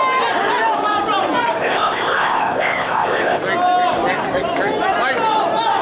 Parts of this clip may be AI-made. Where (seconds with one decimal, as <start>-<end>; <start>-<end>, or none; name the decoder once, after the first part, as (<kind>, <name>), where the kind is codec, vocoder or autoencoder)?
1.6-3.4 (codec, ZipCodec)